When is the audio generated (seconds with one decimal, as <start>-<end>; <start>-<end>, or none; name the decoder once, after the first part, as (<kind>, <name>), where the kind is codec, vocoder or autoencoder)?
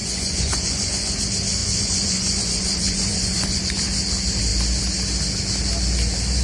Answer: 0.0-1.2 (vocoder, Vocos); 1.6-3.7